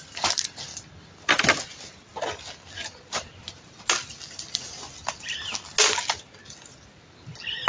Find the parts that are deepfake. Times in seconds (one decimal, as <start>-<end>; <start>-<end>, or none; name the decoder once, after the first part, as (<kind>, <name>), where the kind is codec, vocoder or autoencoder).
none